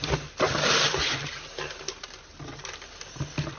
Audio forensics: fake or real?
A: real